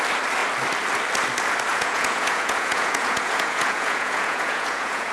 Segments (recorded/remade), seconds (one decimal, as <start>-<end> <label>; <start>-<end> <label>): 0.0-1.7 recorded; 1.7-5.1 remade